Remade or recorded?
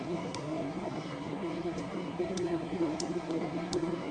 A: remade